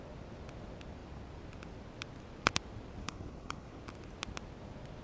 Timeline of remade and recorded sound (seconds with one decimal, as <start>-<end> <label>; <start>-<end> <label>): 0.0-3.0 recorded; 3.0-3.8 remade; 3.8-5.0 recorded